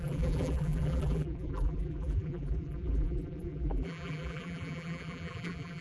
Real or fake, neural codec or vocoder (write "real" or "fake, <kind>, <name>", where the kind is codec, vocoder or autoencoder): fake, vocoder, BigVGAN v2